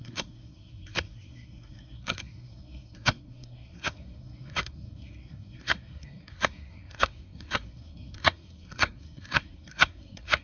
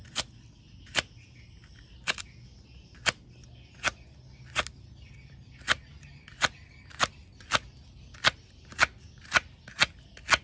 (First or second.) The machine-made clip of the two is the first